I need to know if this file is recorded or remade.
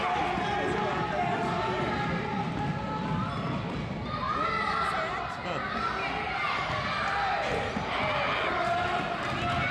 recorded